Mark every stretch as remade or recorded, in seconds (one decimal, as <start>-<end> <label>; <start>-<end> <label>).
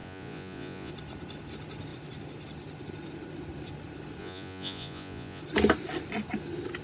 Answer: 0.0-0.9 remade; 0.9-4.2 recorded; 4.2-5.4 remade; 5.4-6.8 recorded